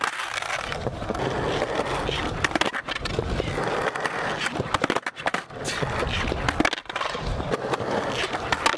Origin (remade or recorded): recorded